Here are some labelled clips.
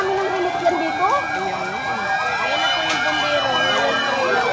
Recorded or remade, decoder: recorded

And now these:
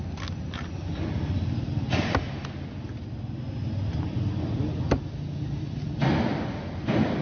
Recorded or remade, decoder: recorded